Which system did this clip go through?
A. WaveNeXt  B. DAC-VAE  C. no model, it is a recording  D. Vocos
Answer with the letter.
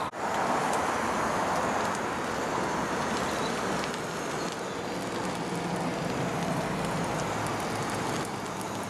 C